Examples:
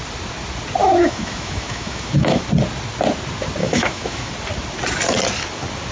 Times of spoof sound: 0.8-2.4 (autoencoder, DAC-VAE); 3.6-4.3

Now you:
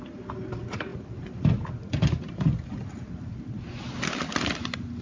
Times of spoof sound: none

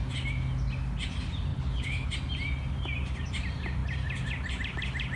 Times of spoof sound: 1.5-2.1 (codec, HILCodec)

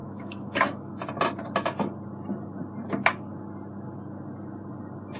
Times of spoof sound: 0.0-1.0 (autoencoder, DAC-VAE)

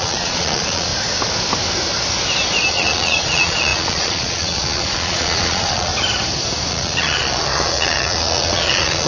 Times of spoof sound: 0.0-0.9 (vocoder, Vocos); 2.7-5.9; 6.7-9.1

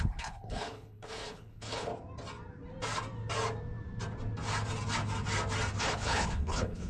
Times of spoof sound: 0.0-1.9 (codec, HILCodec); 5.8-6.9

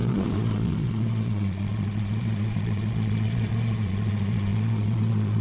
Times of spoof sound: 0.0-5.4 (vocoder, Vocos)

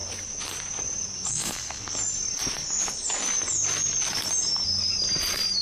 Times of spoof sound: 1.3-1.9 (codec, SNAC)